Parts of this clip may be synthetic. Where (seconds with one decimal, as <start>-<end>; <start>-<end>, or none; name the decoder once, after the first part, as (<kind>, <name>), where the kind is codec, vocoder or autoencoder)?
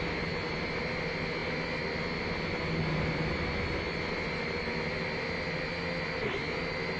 none